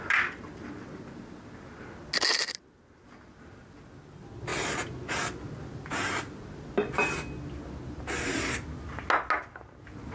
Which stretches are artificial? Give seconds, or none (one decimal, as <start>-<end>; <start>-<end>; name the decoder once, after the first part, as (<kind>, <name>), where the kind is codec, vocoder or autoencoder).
none